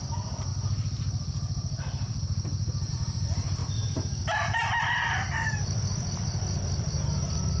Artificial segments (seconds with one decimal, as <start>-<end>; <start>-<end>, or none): 0.0-7.6